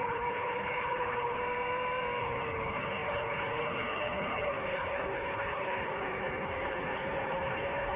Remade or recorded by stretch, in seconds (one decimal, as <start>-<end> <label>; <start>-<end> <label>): 0.0-1.4 remade; 1.4-2.2 recorded; 2.2-8.0 remade